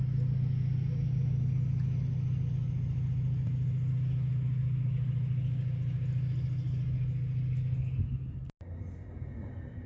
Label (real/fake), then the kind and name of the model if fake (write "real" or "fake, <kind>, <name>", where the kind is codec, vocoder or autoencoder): real